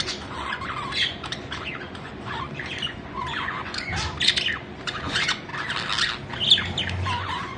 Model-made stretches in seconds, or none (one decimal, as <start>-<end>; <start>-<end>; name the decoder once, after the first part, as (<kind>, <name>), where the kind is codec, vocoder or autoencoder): 0.0-3.9 (vocoder, Vocos); 4.5-5.5; 7.0-7.6